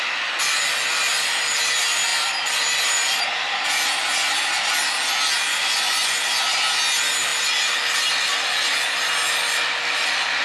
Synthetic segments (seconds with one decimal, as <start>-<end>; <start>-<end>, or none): 5.5-6.2